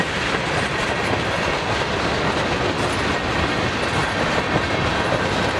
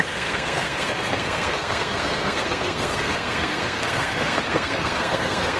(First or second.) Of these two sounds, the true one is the first